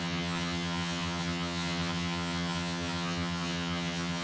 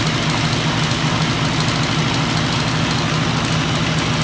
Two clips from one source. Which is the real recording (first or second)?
second